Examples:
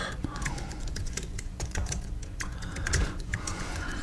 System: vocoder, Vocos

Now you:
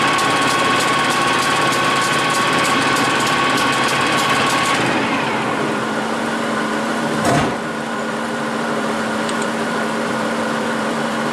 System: vocoder, BigVGAN v2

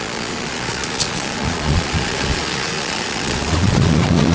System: vocoder, Vocos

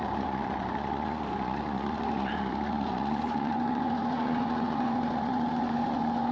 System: vocoder, Vocos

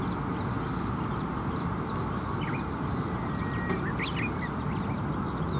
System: none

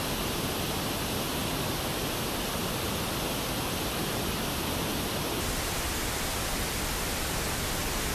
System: none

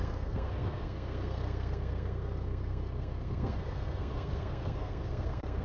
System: codec, SNAC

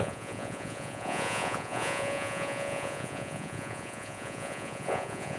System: vocoder, Vocos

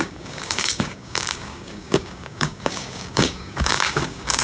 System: codec, DAC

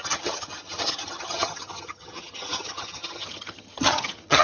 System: vocoder, HiFi-GAN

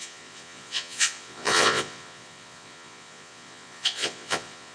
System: vocoder, Vocos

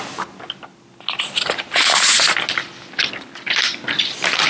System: none